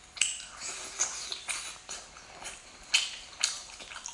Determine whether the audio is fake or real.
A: real